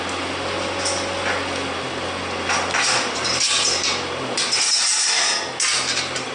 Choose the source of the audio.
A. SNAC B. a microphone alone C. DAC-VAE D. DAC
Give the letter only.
B